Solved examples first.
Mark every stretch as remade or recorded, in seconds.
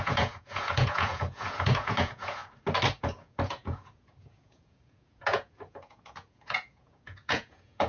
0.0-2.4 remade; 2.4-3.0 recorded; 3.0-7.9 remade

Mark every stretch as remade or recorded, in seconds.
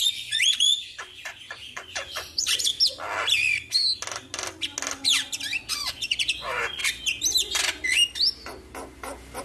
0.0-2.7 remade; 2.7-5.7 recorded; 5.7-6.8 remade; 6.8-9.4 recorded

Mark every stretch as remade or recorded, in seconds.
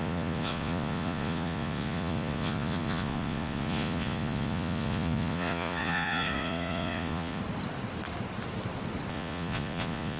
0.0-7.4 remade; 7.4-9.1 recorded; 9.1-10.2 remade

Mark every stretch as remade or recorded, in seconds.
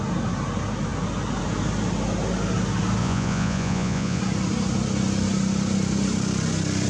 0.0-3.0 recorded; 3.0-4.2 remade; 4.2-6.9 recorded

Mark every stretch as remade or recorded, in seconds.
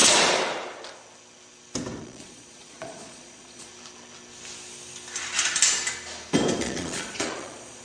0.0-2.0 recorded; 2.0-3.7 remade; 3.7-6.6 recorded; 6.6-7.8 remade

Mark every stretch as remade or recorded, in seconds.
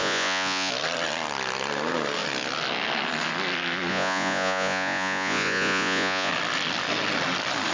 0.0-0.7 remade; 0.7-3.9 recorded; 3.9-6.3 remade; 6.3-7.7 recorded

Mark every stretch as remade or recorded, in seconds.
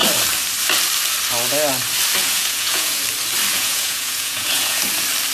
0.0-2.2 recorded; 2.2-3.0 remade; 3.0-3.5 recorded; 3.5-4.8 remade; 4.8-5.3 recorded